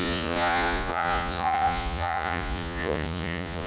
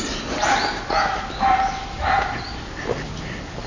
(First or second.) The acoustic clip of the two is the second